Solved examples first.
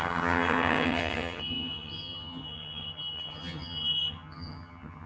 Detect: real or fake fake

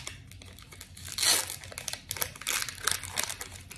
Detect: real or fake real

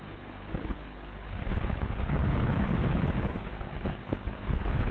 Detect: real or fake fake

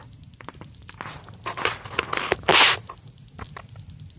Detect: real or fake real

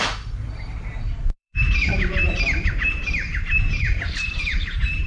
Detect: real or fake fake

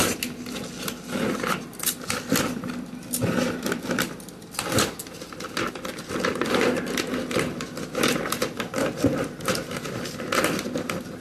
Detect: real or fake real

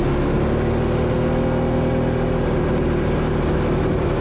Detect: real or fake real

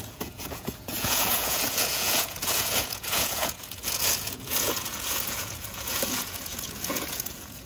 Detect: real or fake fake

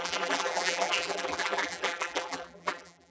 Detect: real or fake fake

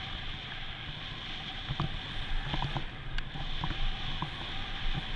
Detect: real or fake real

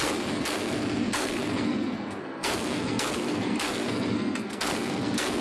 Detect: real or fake fake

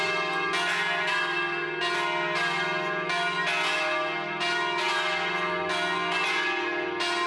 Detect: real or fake real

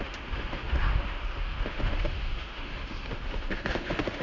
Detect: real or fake fake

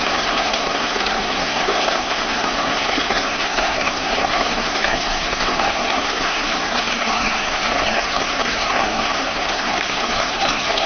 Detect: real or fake fake